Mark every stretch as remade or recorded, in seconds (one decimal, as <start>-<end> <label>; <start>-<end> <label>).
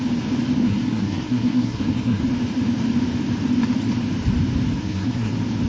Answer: 0.0-0.6 recorded; 0.6-2.2 remade; 2.2-4.8 recorded; 4.8-5.3 remade; 5.3-5.7 recorded